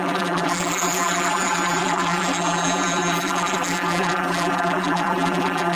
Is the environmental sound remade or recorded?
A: remade